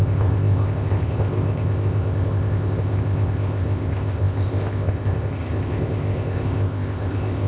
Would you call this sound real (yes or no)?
no